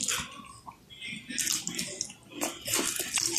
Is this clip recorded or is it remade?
recorded